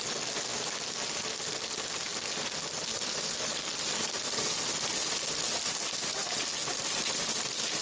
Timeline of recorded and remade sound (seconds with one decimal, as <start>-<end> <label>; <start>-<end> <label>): 0.0-2.9 recorded; 2.9-3.6 remade; 3.6-7.8 recorded